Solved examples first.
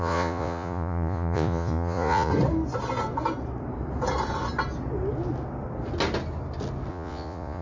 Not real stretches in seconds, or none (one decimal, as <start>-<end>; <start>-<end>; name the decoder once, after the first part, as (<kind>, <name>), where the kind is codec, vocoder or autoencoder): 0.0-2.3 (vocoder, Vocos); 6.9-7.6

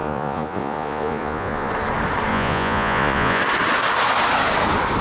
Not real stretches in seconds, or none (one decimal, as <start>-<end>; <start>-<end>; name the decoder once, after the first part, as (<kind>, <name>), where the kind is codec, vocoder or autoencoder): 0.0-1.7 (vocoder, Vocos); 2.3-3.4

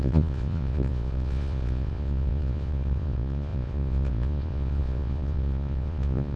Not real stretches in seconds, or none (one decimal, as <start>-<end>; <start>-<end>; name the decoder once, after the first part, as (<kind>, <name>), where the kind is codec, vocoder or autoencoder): 0.0-6.4 (vocoder, Vocos)